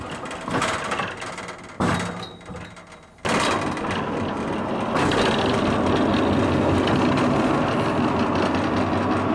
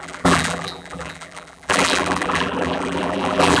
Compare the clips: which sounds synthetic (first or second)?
second